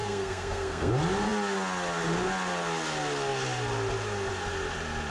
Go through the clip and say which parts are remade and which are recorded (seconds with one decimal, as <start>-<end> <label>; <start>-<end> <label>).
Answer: 0.0-0.9 remade; 0.9-5.1 recorded